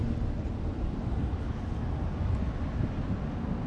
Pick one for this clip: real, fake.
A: real